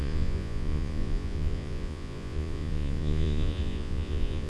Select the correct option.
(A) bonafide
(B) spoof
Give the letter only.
B